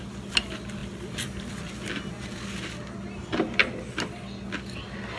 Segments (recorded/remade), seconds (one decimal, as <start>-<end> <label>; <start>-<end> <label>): 0.0-5.2 recorded